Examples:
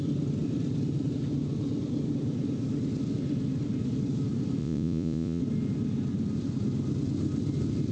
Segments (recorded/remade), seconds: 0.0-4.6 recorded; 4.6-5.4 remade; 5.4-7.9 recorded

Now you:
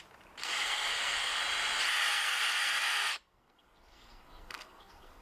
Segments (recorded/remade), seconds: 0.0-0.4 recorded; 0.4-1.4 remade; 1.4-2.1 recorded; 2.1-5.2 remade